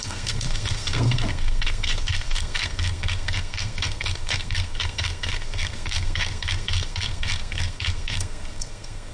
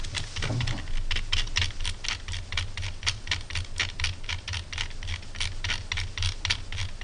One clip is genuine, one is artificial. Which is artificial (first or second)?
first